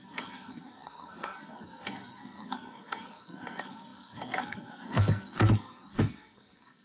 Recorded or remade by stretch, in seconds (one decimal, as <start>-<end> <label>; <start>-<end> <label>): 0.0-6.8 remade